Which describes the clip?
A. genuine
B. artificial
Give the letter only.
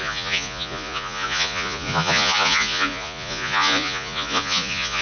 B